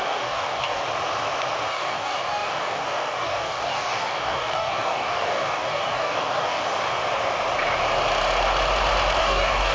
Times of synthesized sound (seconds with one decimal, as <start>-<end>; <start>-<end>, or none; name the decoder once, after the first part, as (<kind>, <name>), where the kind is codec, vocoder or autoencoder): 0.0-0.8 (codec, DAC); 1.7-6.6; 9.2-9.7